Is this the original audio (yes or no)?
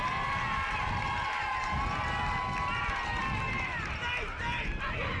yes